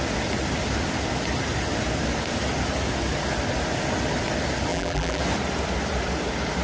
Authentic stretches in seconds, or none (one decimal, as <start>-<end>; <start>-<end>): 0.0-4.7; 5.2-6.6